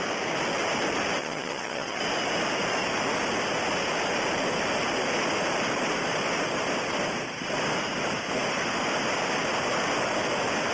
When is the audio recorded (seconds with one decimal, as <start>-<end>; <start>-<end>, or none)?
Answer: 0.0-1.2; 2.0-10.7